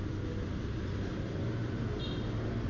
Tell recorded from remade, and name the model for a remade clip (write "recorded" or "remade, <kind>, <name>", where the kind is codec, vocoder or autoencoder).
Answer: recorded